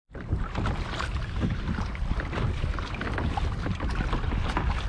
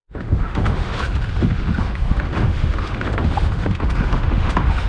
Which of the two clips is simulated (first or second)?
second